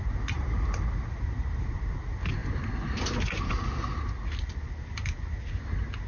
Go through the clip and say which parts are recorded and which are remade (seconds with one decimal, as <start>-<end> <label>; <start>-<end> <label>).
0.0-6.1 recorded